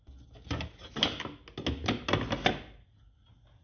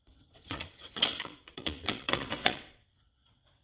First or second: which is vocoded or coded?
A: second